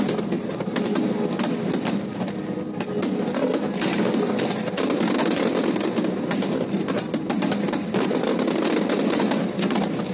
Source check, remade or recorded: recorded